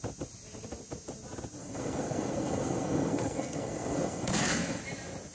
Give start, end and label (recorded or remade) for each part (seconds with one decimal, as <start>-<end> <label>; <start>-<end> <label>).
0.0-1.6 recorded; 1.6-4.8 remade; 4.8-5.3 recorded